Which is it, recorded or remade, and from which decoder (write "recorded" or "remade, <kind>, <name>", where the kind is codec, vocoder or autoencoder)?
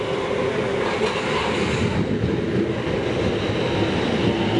recorded